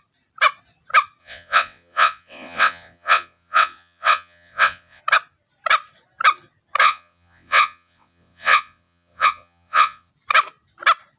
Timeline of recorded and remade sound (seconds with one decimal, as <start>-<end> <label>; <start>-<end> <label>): 0.0-1.2 recorded; 1.2-5.0 remade; 5.0-6.8 recorded; 6.8-10.1 remade; 10.1-11.2 recorded